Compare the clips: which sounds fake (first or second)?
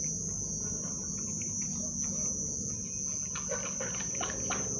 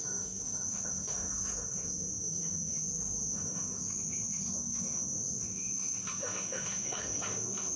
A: second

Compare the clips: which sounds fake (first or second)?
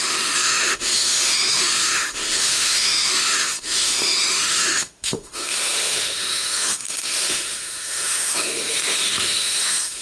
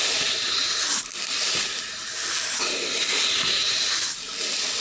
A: first